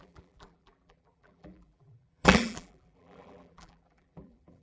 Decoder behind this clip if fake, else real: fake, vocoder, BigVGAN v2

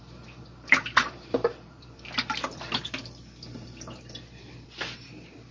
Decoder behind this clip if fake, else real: fake, vocoder, BigVGAN v2